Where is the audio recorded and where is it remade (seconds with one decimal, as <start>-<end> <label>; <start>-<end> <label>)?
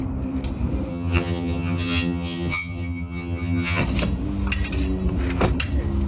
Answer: 0.0-0.9 recorded; 0.9-3.8 remade; 3.8-6.1 recorded